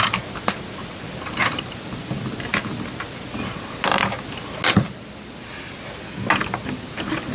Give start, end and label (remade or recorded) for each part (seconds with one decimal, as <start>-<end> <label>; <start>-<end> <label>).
0.0-7.3 recorded